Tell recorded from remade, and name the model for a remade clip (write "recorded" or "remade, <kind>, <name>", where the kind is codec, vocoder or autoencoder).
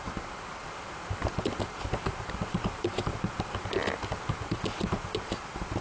recorded